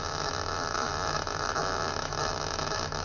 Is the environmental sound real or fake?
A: fake